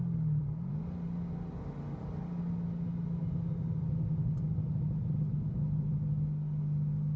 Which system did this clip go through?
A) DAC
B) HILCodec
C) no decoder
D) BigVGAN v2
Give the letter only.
C